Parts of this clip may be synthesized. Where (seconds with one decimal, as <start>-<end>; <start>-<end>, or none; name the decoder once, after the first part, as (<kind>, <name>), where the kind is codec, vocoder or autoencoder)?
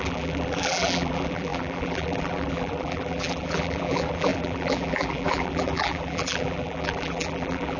0.0-7.8 (vocoder, BigVGAN v2)